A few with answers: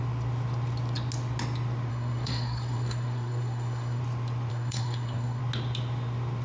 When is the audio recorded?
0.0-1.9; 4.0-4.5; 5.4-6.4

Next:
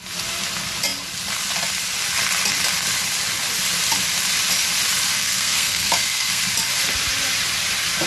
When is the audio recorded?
0.0-5.1; 6.4-8.1

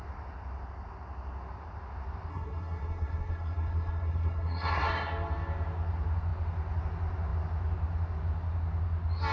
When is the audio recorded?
0.0-2.3; 5.1-9.3

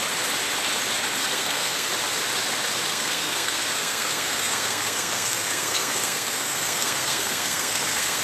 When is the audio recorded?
0.0-1.2; 1.9-2.9

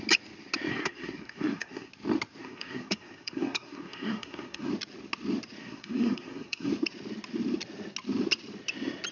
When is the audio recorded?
0.0-0.7; 1.9-2.4; 4.7-5.6; 6.7-9.1

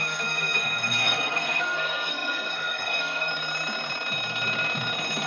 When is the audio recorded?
3.3-5.3